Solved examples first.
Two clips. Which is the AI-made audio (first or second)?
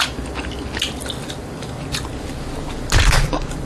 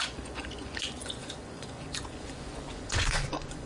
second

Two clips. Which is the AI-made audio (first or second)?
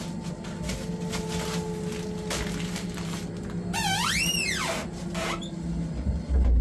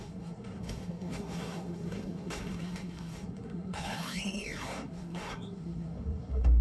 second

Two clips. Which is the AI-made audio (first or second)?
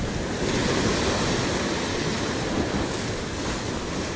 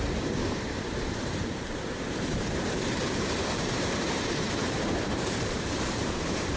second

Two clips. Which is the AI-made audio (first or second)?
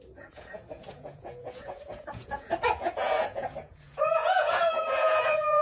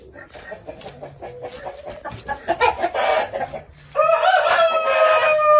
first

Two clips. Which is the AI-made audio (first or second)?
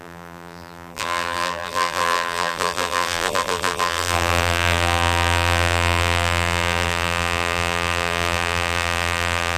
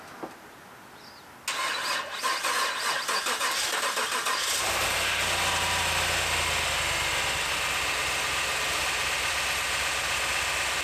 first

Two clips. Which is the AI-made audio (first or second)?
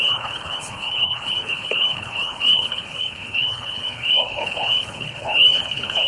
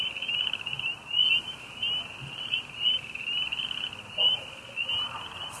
first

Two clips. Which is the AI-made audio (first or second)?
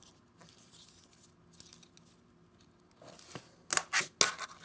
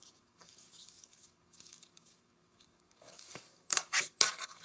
second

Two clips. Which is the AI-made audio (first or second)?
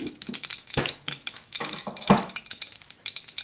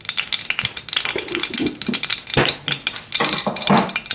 first